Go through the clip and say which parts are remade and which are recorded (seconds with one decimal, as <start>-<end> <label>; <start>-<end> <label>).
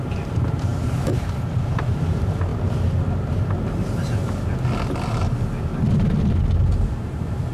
0.0-2.5 remade; 2.5-7.0 recorded; 7.0-7.5 remade